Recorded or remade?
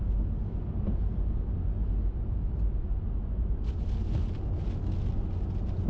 recorded